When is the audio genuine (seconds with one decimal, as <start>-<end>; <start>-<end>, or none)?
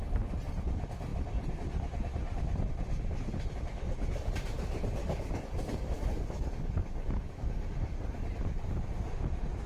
0.0-5.0; 8.0-9.7